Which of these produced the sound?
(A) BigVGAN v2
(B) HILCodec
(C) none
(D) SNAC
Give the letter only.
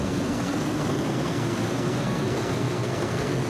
D